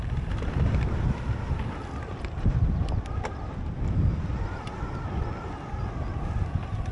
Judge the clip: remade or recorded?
recorded